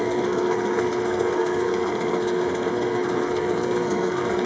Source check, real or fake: fake